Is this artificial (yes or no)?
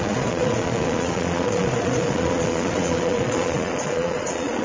yes